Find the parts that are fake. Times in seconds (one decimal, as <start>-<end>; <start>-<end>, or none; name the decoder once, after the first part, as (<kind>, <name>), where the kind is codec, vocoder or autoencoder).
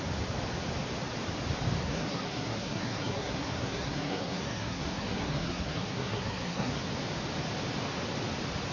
1.8-6.8 (codec, SNAC)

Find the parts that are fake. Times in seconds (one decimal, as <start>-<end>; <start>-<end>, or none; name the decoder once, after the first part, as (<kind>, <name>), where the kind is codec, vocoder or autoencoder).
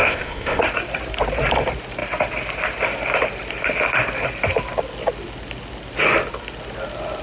0.0-0.6 (codec, ZipCodec)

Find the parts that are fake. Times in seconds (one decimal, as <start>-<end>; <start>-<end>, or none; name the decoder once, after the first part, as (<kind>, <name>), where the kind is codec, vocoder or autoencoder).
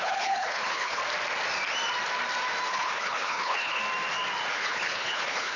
0.0-1.0 (codec, HILCodec); 2.7-3.8; 4.5-5.6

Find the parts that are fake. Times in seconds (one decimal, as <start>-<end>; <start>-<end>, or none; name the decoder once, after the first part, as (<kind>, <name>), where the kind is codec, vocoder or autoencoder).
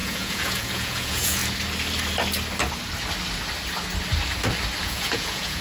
0.0-1.4 (vocoder, Vocos); 4.8-5.6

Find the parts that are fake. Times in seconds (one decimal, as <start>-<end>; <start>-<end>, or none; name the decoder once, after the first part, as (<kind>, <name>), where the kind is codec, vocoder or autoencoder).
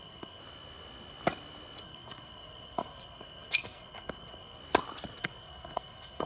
0.0-0.4 (codec, SNAC); 1.8-4.6; 5.2-6.3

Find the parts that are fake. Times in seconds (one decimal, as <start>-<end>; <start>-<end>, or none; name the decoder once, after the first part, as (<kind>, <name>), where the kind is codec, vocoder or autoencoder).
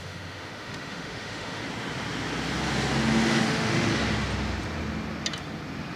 0.0-1.6 (autoencoder, DAC-VAE); 3.4-3.9